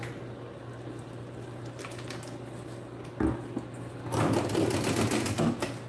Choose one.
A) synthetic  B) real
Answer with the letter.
B